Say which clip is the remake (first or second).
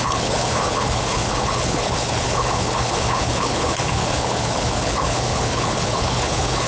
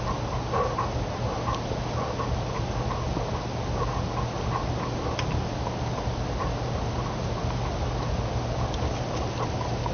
first